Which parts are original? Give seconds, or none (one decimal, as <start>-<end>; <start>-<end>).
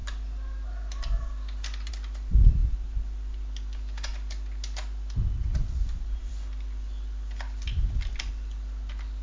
0.0-9.2